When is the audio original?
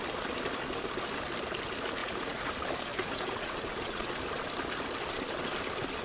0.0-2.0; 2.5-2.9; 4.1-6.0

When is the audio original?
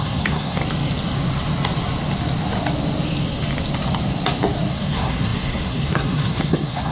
0.6-4.7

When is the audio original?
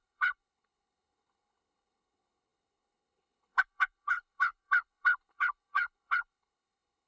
none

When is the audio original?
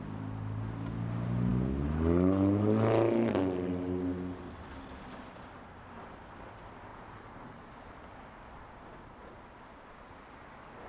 0.0-6.9; 7.9-10.9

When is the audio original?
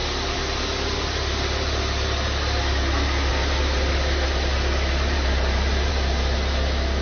0.0-1.2; 2.6-3.3; 5.9-7.0